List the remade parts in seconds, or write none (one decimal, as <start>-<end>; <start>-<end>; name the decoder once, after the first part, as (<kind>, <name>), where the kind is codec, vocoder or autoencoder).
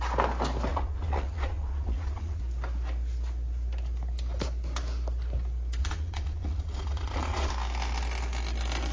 0.7-2.4 (vocoder, Vocos); 5.8-7.5